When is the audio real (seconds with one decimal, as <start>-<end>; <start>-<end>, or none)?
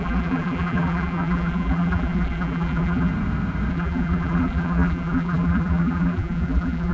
3.1-3.7